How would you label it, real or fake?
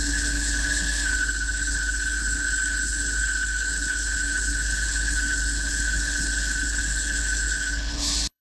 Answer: fake